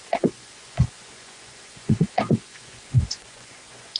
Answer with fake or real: fake